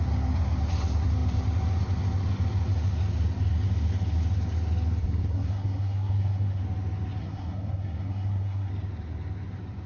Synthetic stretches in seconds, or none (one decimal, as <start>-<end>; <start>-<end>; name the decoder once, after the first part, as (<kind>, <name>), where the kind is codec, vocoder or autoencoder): 5.0-6.6 (codec, SNAC); 7.2-8.7